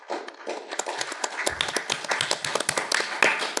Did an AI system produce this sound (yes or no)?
no